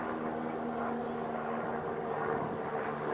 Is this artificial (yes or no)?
no